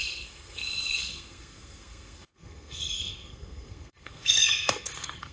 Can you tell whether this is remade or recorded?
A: remade